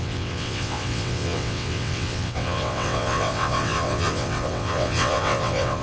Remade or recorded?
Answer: remade